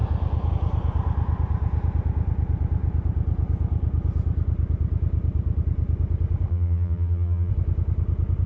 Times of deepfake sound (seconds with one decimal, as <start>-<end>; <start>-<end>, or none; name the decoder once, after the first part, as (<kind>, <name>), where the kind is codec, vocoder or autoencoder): 6.5-7.5 (vocoder, BigVGAN v2)